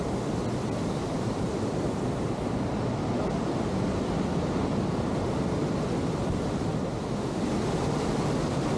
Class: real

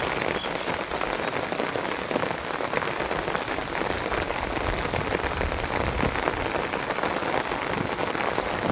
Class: real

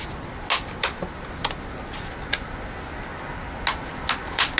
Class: real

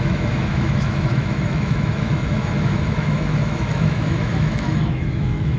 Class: fake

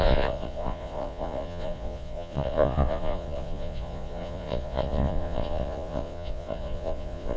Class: fake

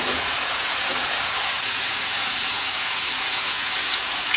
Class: fake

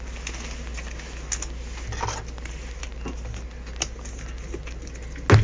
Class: real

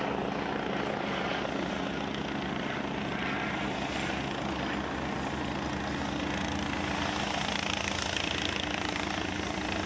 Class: real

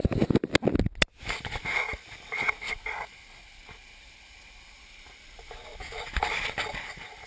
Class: real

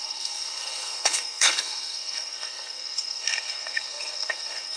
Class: fake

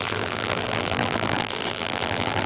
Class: fake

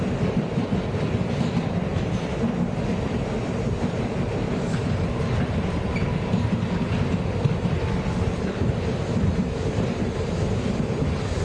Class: real